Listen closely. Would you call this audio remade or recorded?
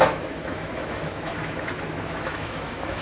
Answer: remade